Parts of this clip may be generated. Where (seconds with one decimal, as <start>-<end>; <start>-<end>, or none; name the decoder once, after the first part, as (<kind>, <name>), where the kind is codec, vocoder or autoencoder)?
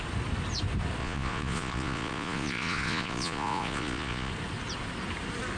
1.0-4.3 (vocoder, Vocos)